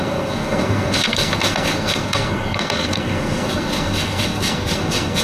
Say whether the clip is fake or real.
fake